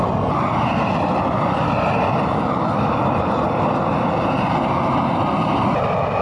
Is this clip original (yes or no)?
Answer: yes